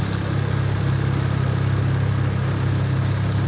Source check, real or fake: real